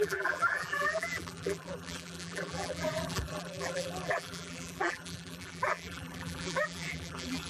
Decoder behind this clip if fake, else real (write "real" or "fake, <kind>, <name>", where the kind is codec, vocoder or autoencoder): fake, vocoder, BigVGAN v2